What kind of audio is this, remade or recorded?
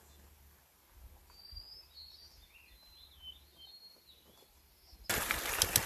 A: recorded